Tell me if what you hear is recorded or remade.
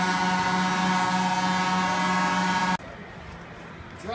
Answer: recorded